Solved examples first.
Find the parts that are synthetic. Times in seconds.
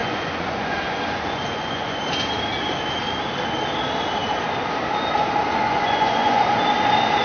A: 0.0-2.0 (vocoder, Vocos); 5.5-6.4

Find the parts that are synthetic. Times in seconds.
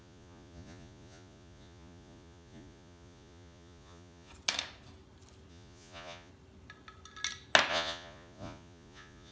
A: 0.0-4.3 (vocoder, Vocos); 5.5-6.3; 7.7-9.3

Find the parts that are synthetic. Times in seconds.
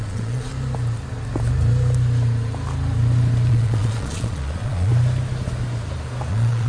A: 0.0-0.5 (vocoder, Vocos); 3.5-4.9; 6.3-6.7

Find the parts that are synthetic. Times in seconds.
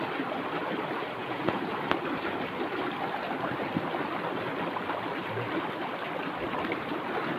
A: 1.2-1.7 (vocoder, Vocos)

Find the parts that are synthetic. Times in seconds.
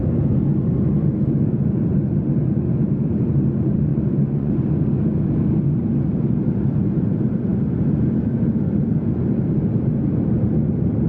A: 3.9-4.5 (vocoder, Vocos)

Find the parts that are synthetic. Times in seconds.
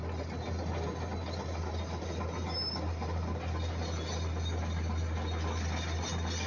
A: none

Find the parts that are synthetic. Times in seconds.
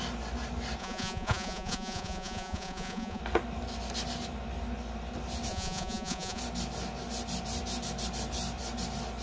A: 0.8-3.2 (vocoder, Vocos); 5.5-6.4